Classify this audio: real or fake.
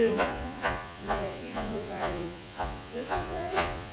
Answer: fake